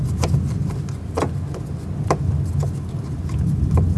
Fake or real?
real